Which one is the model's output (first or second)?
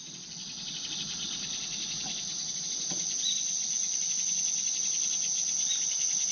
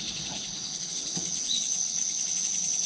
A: second